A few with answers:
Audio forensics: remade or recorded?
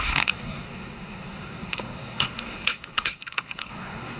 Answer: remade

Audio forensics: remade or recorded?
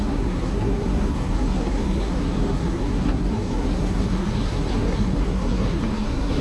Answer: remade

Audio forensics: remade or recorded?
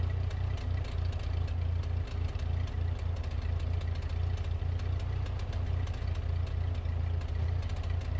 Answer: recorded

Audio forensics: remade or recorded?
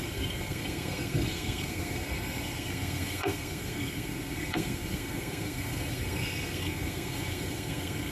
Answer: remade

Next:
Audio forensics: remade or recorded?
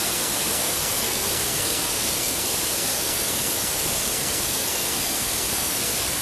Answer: remade